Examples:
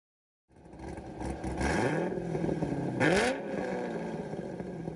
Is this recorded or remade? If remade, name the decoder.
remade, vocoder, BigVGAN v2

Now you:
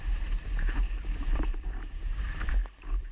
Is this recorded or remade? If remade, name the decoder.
remade, vocoder, BigVGAN v2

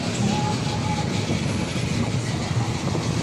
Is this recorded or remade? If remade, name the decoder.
recorded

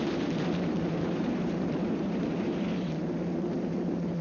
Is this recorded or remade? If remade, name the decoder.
remade, vocoder, BigVGAN v2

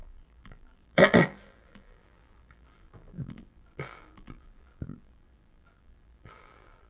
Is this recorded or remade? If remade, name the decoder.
remade, vocoder, BigVGAN v2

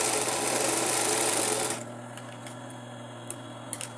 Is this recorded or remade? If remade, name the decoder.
recorded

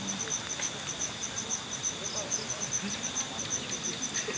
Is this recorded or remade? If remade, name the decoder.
recorded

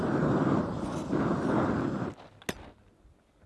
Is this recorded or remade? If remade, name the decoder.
recorded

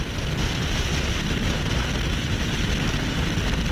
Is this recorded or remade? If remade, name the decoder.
recorded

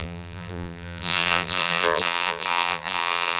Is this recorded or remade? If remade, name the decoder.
remade, vocoder, BigVGAN v2